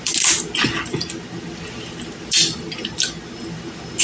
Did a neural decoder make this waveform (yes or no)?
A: no